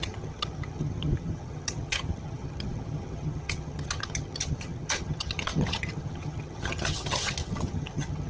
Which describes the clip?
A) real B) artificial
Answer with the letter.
B